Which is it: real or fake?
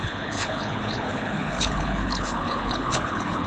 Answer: fake